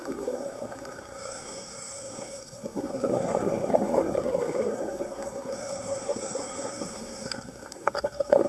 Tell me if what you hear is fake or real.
fake